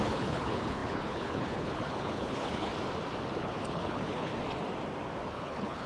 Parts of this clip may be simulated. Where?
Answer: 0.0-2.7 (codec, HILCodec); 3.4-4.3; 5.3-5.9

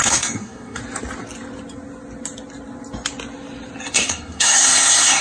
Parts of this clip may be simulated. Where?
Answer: 0.0-0.8 (codec, SNAC); 3.9-5.2

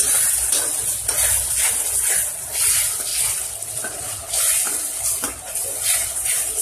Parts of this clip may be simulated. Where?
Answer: none

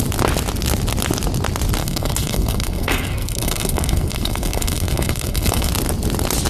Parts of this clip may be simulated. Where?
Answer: 1.8-5.7 (codec, SNAC)